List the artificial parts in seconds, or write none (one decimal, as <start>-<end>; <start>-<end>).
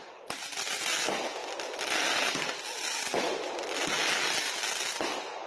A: none